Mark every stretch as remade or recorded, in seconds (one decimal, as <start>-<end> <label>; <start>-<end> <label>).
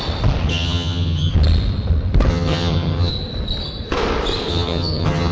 0.0-0.5 recorded; 0.5-1.3 remade; 1.3-2.3 recorded; 2.3-3.1 remade; 3.1-4.5 recorded; 4.5-5.3 remade